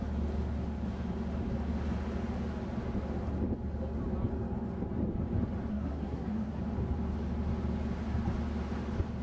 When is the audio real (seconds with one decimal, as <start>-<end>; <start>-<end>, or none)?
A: 0.0-5.7; 6.6-9.2